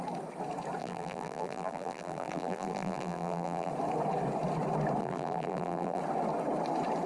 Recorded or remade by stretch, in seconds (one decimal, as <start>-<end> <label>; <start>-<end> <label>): 0.0-0.8 recorded; 0.8-3.7 remade; 3.7-5.0 recorded; 5.0-6.0 remade; 6.0-7.1 recorded